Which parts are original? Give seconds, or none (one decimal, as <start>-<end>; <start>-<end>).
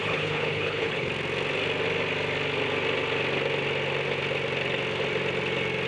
1.1-5.9